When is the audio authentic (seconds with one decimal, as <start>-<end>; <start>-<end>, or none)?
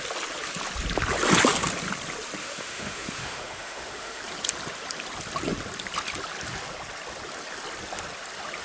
0.0-2.4; 4.2-8.6